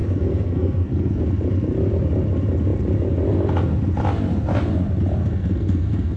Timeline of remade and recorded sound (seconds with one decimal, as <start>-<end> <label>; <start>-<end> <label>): 0.0-1.2 remade; 1.2-5.2 recorded; 5.2-6.2 remade